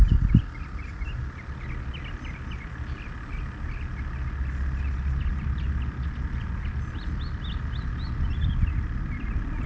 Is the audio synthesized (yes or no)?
no